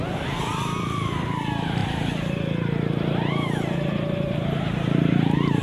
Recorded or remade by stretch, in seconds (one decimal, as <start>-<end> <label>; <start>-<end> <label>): 0.0-1.8 recorded; 1.8-5.6 remade